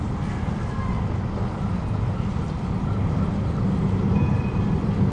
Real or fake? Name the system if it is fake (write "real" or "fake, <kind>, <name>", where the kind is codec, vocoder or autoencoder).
real